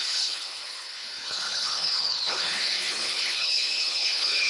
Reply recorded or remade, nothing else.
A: remade